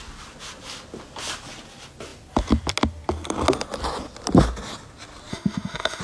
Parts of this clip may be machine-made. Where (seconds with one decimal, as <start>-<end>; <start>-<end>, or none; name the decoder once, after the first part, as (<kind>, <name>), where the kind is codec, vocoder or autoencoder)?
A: 5.3-6.0 (autoencoder, DAC-VAE)

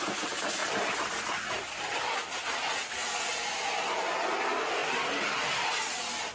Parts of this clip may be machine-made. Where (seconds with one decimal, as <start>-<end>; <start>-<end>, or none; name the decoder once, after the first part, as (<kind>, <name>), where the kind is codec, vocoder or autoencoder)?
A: none

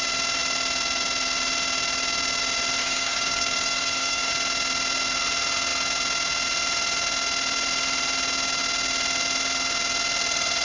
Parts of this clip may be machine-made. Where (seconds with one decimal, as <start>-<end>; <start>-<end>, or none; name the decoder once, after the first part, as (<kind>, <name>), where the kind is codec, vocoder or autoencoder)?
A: 2.8-4.3 (codec, DAC)

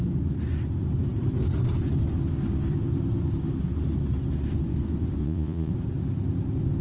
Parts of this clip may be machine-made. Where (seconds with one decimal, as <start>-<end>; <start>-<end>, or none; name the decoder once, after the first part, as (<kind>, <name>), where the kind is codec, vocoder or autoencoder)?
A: 5.2-5.7 (vocoder, Vocos)